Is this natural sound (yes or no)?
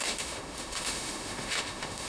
no